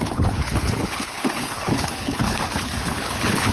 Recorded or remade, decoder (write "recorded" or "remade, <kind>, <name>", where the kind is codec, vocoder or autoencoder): remade, codec, HILCodec